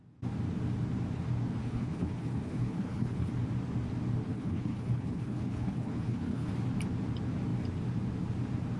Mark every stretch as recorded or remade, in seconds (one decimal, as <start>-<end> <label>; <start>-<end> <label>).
0.0-1.6 recorded; 1.6-3.3 remade; 3.3-4.3 recorded; 4.3-6.5 remade; 6.5-8.8 recorded